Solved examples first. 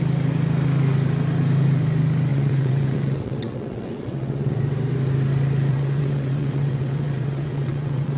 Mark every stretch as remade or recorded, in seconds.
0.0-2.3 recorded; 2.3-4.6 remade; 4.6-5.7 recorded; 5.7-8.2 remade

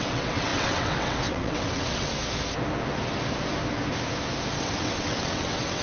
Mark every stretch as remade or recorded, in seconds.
0.0-2.1 remade; 2.1-4.6 recorded; 4.6-5.8 remade